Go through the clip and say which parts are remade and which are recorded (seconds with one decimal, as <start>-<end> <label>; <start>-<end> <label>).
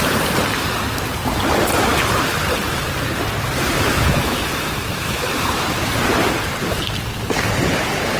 0.0-3.9 recorded; 3.9-5.3 remade; 5.3-8.2 recorded